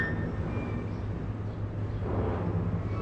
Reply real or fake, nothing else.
real